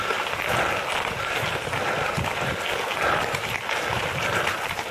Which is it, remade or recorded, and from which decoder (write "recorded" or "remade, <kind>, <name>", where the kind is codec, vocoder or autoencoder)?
recorded